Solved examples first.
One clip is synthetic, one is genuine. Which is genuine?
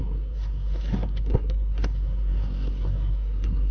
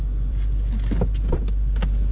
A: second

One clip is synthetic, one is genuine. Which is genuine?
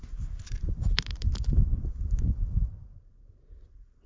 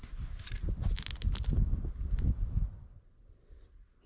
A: second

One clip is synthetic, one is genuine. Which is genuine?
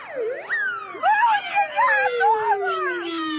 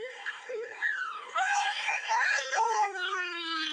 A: first